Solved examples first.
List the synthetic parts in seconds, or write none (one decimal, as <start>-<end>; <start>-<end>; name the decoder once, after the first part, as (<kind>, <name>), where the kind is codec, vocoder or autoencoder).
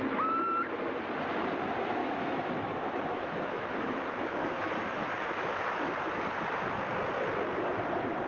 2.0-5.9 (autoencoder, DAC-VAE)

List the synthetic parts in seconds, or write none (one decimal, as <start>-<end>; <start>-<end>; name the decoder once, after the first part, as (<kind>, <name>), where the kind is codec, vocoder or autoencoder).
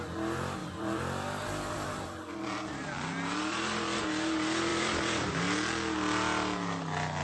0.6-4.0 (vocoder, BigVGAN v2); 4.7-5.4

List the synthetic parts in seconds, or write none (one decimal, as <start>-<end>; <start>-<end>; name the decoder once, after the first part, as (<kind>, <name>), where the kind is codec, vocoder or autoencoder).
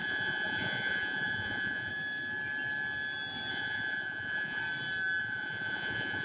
0.0-1.9 (vocoder, Vocos); 3.5-4.6; 5.2-6.2